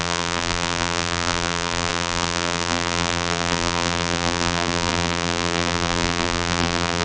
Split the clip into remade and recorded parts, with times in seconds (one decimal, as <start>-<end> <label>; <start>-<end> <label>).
0.0-7.0 remade